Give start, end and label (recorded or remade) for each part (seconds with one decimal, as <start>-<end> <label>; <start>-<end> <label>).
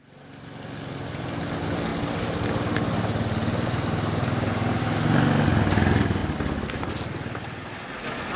0.0-8.4 recorded